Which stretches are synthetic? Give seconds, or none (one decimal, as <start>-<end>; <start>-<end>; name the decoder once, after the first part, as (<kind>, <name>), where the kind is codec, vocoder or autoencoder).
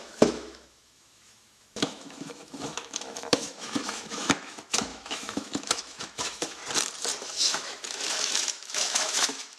0.0-6.6 (autoencoder, DAC-VAE); 7.2-9.6